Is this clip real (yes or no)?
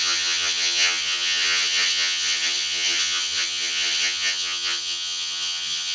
no